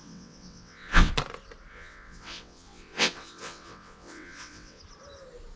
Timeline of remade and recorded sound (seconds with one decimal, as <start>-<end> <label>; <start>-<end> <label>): 0.0-1.1 remade; 1.1-1.7 recorded; 1.7-4.8 remade; 4.8-5.6 recorded